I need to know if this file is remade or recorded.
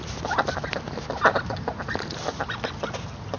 recorded